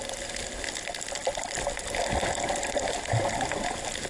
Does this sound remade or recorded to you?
recorded